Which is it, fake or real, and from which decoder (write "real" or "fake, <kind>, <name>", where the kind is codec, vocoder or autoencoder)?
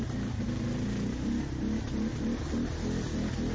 real